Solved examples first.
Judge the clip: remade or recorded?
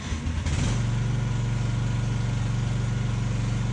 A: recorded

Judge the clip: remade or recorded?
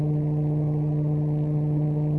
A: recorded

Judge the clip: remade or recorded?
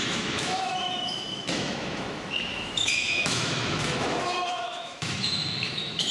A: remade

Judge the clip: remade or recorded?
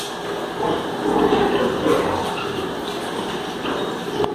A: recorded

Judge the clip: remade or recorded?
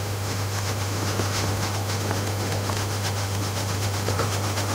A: remade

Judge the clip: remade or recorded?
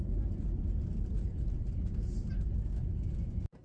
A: recorded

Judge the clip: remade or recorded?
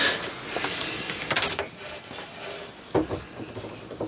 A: recorded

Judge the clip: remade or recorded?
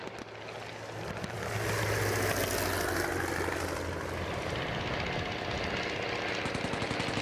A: recorded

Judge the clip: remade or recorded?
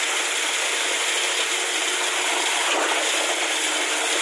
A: recorded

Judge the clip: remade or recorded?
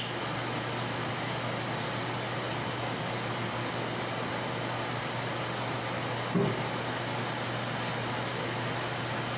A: recorded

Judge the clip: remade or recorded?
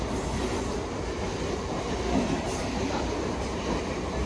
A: recorded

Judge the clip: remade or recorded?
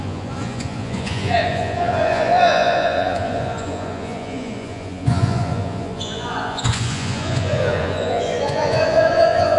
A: remade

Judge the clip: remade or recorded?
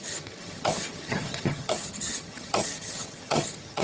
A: remade